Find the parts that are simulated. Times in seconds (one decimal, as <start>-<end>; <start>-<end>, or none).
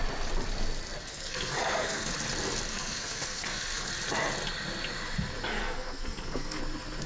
1.1-2.1; 2.7-3.9; 5.5-6.6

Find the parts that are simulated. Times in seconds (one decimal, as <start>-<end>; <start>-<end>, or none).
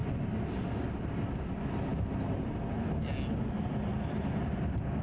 none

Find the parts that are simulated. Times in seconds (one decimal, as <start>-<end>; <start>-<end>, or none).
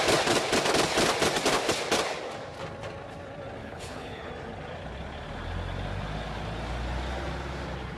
3.6-4.3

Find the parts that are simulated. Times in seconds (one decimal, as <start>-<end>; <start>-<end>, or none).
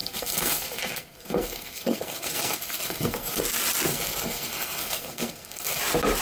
0.0-3.4; 3.9-5.8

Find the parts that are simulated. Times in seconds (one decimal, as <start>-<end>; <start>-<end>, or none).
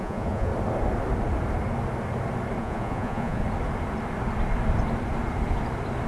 0.0-0.5; 2.6-3.4